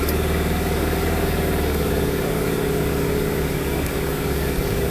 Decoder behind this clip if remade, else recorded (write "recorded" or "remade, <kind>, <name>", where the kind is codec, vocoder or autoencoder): remade, codec, DAC